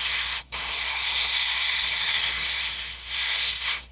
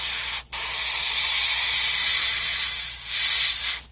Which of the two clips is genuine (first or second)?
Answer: second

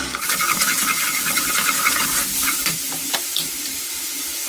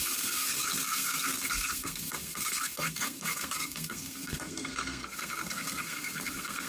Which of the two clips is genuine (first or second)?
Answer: first